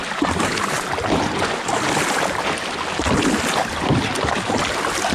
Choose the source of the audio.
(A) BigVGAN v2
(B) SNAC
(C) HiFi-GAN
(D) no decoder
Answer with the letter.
D